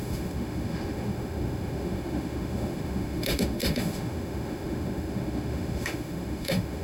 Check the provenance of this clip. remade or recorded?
remade